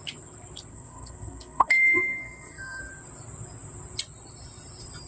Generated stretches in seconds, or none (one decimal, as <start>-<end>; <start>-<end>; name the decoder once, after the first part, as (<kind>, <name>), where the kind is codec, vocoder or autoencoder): 0.7-2.8 (codec, SNAC)